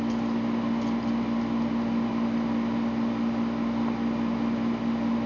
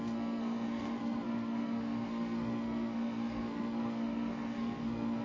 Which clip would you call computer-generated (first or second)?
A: second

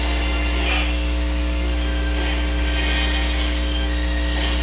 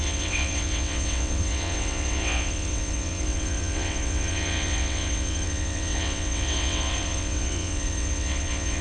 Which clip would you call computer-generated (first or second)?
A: second